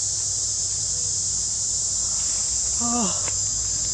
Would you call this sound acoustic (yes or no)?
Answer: yes